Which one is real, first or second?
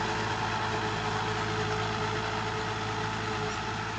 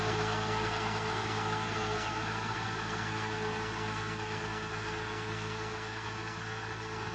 first